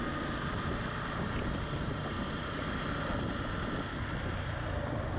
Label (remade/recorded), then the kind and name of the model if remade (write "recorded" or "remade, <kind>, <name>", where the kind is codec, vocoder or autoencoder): recorded